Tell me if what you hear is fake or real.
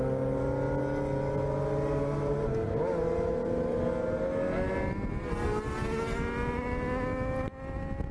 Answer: real